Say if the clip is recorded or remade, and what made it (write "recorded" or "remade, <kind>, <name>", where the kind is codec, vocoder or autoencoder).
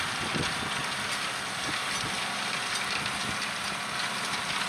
recorded